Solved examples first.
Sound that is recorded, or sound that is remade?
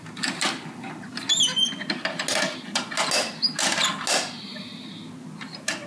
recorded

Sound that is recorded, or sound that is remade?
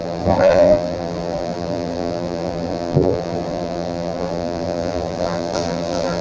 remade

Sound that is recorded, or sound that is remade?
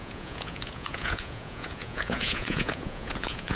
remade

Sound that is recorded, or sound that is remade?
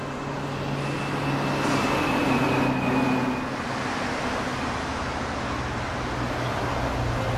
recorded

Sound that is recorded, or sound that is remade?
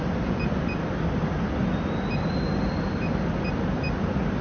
recorded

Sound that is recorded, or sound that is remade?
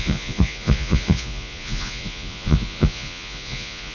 remade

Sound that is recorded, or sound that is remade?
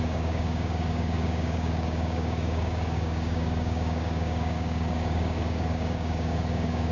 remade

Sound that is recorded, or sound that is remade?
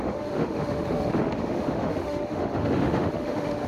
remade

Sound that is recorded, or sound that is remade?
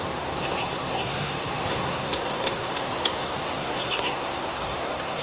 remade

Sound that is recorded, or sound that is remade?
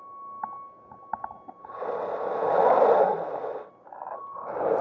recorded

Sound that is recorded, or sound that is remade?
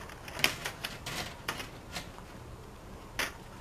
recorded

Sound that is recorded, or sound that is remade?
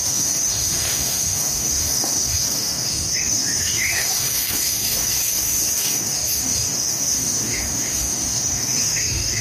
remade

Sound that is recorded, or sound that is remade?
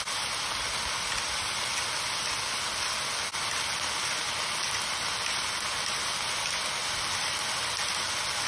recorded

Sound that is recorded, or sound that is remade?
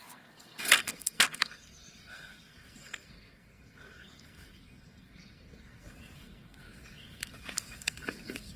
remade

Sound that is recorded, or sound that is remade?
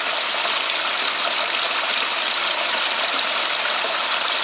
recorded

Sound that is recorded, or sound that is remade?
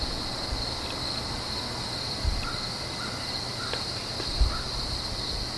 recorded